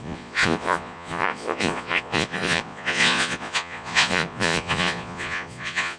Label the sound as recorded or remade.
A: remade